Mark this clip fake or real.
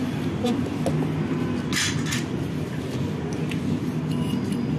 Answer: real